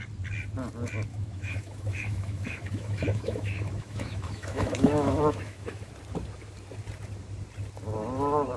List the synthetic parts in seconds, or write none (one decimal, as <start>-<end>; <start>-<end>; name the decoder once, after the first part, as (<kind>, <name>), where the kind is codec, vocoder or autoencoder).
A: 1.1-5.9 (autoencoder, DAC-VAE)